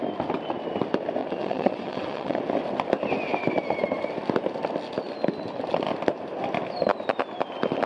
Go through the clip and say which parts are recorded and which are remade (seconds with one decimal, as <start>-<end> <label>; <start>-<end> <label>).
0.0-1.2 recorded; 1.2-2.4 remade; 2.4-7.9 recorded